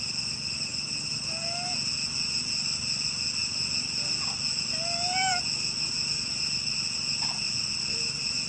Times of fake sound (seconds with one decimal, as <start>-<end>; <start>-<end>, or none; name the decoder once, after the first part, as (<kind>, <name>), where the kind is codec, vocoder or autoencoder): none